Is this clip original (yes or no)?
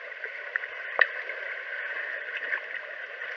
yes